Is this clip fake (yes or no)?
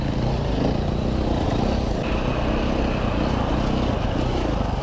no